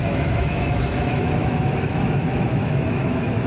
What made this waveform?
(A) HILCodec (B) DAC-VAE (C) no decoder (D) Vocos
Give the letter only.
B